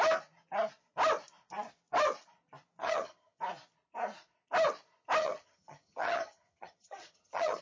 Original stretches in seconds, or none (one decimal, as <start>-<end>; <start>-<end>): 0.0-2.8; 3.4-5.2